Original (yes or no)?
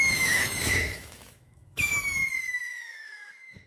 no